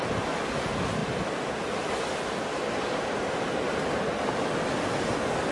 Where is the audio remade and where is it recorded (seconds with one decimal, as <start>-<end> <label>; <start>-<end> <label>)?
0.0-5.5 recorded